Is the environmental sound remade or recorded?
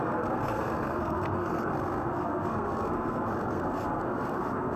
remade